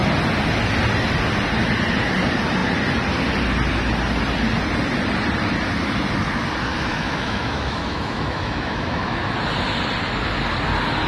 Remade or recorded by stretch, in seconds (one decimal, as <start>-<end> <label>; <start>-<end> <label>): 0.0-6.9 recorded; 6.9-9.2 remade; 9.2-11.1 recorded